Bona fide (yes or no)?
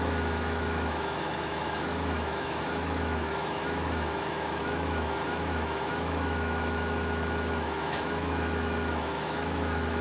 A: no